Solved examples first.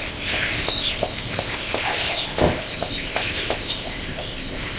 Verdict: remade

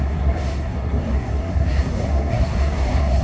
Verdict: remade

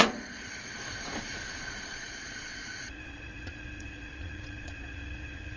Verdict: remade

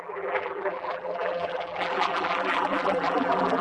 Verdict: remade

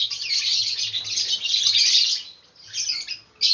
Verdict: recorded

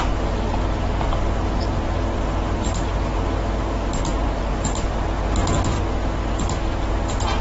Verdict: recorded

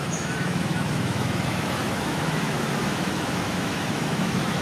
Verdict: remade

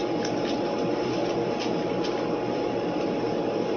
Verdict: remade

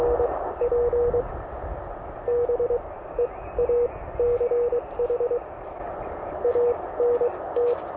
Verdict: recorded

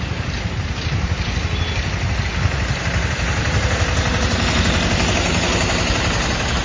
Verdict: recorded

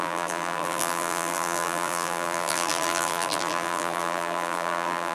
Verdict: remade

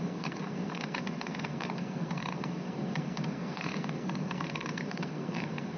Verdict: remade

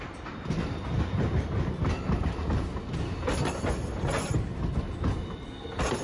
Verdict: recorded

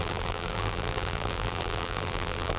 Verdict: remade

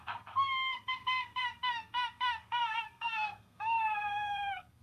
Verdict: remade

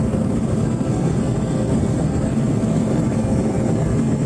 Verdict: remade